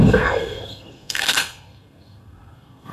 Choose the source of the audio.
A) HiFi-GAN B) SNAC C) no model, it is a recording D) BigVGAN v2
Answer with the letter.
B